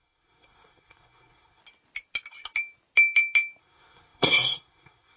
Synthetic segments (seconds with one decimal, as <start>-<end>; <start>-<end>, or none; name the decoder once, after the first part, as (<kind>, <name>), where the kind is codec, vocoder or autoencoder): 0.0-1.6 (codec, SNAC); 3.6-5.2